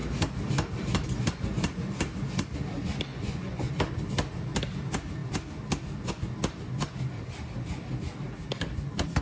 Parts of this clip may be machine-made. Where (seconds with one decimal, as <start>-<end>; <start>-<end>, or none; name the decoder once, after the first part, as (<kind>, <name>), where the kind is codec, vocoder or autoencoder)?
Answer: 3.1-3.7 (vocoder, Vocos)